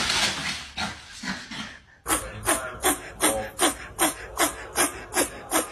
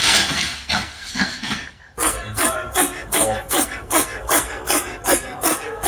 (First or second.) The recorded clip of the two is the first